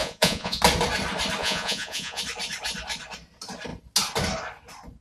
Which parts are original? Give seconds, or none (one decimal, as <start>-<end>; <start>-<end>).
0.6-1.4; 2.2-5.0